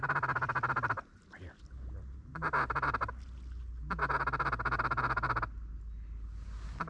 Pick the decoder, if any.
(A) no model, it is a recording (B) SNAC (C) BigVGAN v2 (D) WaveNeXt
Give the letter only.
A